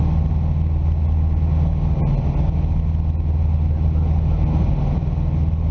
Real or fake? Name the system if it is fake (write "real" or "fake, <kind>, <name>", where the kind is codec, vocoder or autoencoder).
real